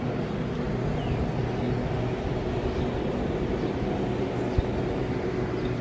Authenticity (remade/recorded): recorded